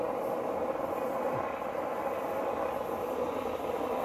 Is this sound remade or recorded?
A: recorded